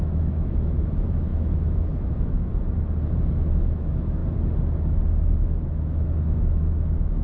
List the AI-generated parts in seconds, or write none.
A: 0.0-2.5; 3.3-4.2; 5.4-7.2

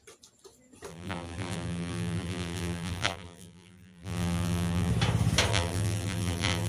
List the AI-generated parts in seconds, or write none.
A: 0.9-4.9; 5.5-6.7

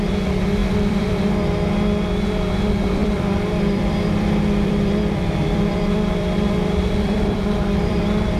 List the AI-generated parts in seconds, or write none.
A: 0.6-1.4; 3.0-8.0

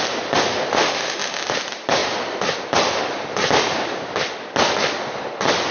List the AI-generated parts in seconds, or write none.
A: 0.7-1.6

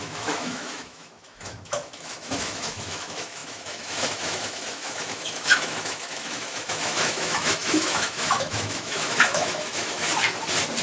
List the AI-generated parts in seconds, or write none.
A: 0.0-10.1

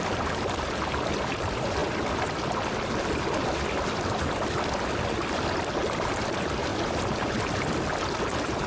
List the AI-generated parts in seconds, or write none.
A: none

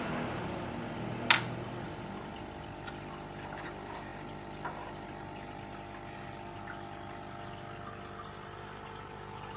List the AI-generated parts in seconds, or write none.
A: none

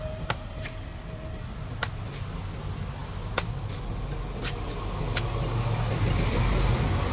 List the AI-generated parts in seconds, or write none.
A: none